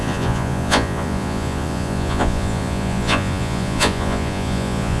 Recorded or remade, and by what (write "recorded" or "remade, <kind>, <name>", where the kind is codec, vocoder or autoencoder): remade, vocoder, Vocos